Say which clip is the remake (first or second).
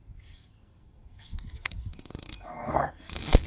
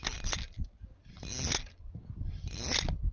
first